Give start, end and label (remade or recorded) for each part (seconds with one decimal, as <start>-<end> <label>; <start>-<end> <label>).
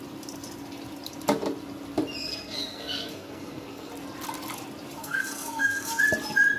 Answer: 0.0-2.2 recorded; 2.2-3.9 remade; 3.9-5.0 recorded; 5.0-6.0 remade; 6.0-6.6 recorded